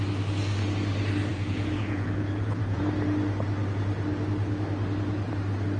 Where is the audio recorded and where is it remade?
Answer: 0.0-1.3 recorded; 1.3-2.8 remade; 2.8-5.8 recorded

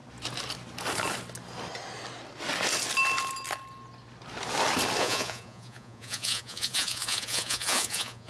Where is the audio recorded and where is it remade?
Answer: 0.0-5.0 recorded; 5.0-8.3 remade

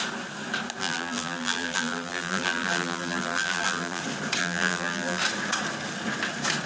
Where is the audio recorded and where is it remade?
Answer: 0.0-0.8 recorded; 0.8-4.0 remade; 4.0-4.4 recorded; 4.4-5.2 remade; 5.2-6.7 recorded